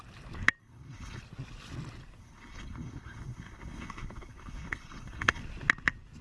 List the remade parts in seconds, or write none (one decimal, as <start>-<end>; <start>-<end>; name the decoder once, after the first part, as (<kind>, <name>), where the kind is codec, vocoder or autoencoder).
0.6-1.2 (codec, HILCodec); 2.2-5.4